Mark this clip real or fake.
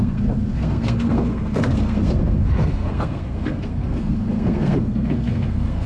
fake